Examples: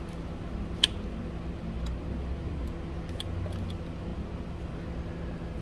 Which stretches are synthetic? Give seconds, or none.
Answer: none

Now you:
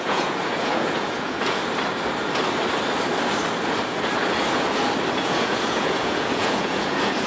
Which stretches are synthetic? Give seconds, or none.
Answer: 0.0-1.6; 5.1-7.3

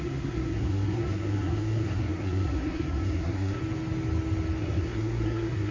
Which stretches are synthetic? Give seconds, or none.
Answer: 0.0-3.6; 4.6-5.7

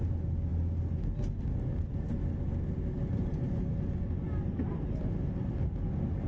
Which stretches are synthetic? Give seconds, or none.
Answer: none

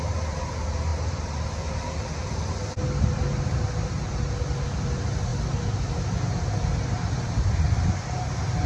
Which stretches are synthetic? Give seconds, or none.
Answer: 0.9-2.7